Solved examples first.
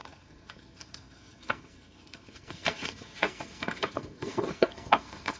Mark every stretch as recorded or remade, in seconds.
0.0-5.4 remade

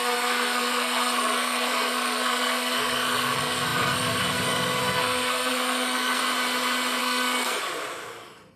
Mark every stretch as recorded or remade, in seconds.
0.0-6.2 remade; 6.2-7.0 recorded; 7.0-7.6 remade; 7.6-8.6 recorded

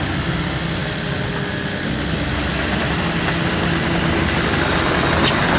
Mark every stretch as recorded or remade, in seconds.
0.0-5.6 recorded

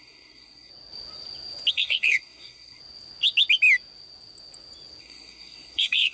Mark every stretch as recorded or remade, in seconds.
0.0-0.7 remade; 0.7-1.7 recorded; 1.7-2.8 remade; 2.8-5.0 recorded; 5.0-6.1 remade

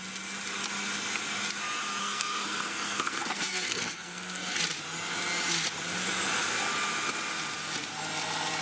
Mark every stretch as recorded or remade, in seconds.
0.0-2.0 recorded; 2.0-4.6 remade; 4.6-8.6 recorded